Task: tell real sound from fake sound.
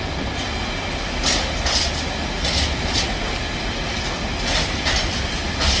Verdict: real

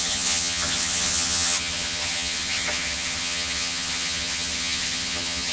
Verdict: fake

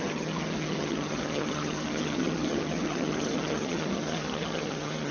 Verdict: fake